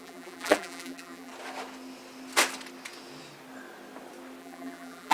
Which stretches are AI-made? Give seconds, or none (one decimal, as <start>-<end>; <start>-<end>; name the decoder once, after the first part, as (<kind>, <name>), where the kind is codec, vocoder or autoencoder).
0.0-1.3 (vocoder, BigVGAN v2); 4.4-5.1